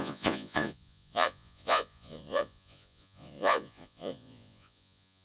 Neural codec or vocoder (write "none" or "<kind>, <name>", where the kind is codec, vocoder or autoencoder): vocoder, Vocos